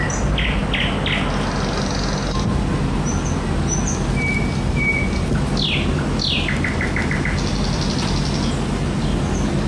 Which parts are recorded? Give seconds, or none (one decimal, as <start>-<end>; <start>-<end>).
0.0-9.7